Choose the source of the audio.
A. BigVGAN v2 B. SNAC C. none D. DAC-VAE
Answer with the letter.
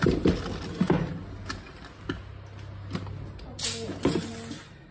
C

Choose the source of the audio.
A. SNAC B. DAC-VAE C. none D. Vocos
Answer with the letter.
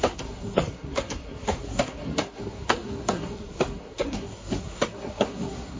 A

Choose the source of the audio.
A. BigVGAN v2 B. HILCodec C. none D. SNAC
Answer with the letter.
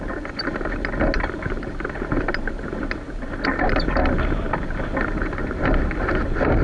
C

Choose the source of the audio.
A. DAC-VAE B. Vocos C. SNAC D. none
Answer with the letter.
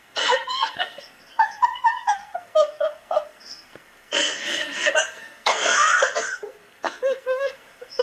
C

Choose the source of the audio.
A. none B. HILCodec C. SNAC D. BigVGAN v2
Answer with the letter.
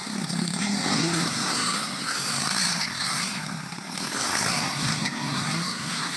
C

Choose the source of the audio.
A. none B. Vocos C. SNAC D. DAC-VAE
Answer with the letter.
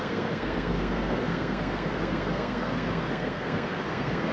C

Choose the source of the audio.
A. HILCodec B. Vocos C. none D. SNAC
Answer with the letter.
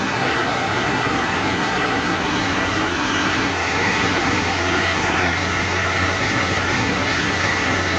D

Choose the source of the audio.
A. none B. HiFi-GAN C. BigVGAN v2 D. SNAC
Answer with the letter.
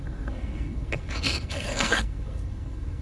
D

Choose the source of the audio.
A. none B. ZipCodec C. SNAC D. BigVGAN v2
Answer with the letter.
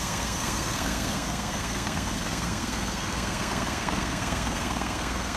C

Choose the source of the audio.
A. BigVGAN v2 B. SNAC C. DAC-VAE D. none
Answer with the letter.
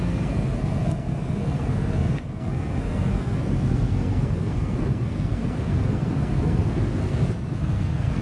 B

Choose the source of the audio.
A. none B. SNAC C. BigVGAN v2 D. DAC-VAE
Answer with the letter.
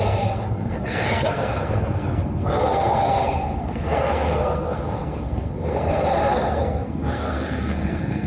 B